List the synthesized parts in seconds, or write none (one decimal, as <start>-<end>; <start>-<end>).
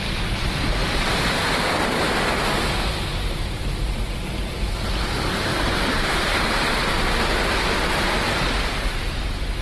0.8-2.1; 5.5-6.2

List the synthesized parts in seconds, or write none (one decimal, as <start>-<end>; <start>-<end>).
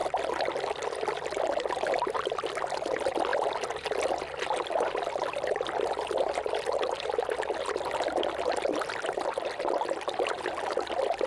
none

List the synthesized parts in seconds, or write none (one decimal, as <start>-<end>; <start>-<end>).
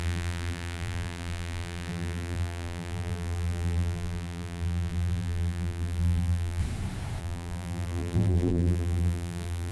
0.0-6.6; 7.2-9.7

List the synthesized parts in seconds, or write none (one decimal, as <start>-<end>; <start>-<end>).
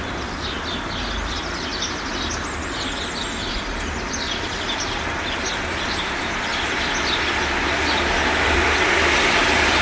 0.0-1.7; 3.5-6.5; 8.4-9.8